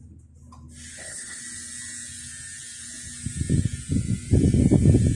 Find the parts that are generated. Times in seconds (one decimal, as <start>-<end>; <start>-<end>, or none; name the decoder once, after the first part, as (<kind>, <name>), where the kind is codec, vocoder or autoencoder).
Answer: 0.9-1.4 (codec, HILCodec)